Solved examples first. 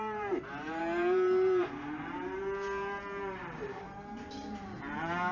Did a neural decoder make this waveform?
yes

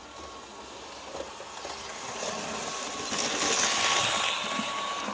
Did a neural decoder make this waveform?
no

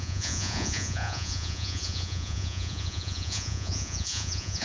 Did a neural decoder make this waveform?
yes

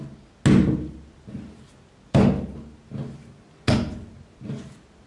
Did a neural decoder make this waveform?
no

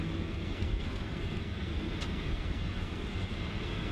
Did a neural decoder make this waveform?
yes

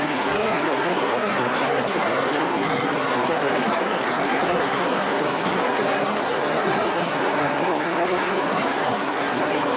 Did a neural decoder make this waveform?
yes